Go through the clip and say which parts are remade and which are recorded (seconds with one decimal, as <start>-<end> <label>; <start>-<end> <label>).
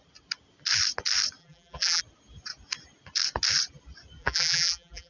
0.0-1.4 recorded; 1.4-2.0 remade; 2.0-4.2 recorded; 4.2-5.1 remade